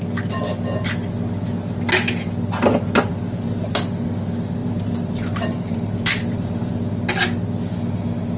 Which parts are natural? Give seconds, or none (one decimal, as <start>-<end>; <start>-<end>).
0.0-3.1; 3.7-4.6; 6.7-8.4